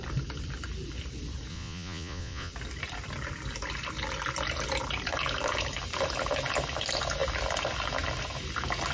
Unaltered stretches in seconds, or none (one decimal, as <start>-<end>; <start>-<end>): 0.0-1.5; 2.5-8.9